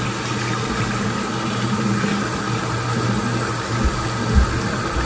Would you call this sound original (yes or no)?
yes